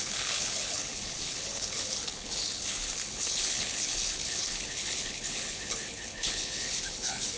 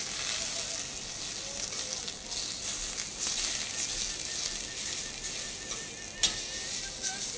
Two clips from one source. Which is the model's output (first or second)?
first